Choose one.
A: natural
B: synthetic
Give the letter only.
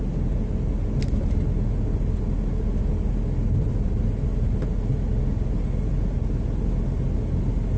A